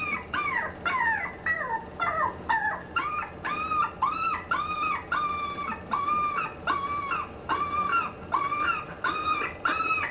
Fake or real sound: real